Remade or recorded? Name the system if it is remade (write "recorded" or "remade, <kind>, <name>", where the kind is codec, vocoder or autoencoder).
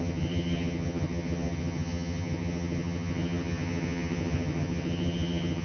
remade, vocoder, HiFi-GAN